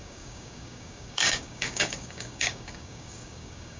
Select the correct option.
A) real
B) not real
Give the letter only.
B